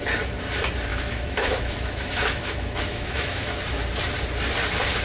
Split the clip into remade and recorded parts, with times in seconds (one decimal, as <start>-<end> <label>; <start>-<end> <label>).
0.0-0.9 recorded; 0.9-3.6 remade; 3.6-5.0 recorded